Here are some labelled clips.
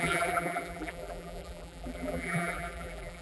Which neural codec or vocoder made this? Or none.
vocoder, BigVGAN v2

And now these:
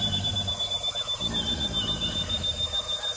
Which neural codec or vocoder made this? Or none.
none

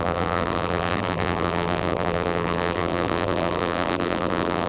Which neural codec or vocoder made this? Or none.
vocoder, BigVGAN v2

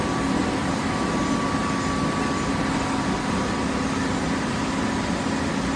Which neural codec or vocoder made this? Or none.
none